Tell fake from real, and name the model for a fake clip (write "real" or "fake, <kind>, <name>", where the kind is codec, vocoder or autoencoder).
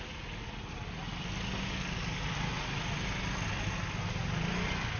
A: real